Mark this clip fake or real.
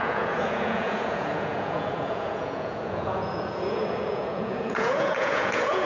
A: fake